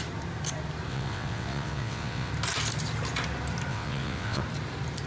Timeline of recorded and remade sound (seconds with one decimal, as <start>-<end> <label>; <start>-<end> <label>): 0.0-0.9 recorded; 0.9-2.3 remade; 2.3-3.7 recorded; 3.7-4.4 remade; 4.4-5.1 recorded